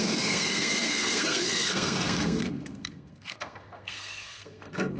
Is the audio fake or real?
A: fake